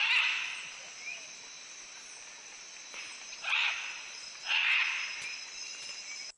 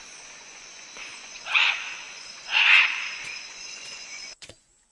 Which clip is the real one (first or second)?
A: first